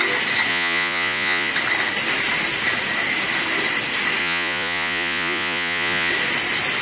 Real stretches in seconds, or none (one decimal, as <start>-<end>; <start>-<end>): 0.0-0.5; 1.5-4.2; 6.1-6.8